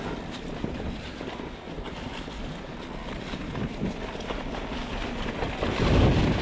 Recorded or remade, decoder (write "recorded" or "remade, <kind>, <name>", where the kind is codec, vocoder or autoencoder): recorded